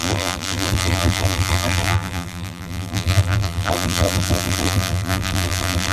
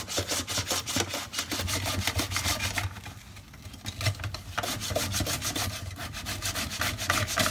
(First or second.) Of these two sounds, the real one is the second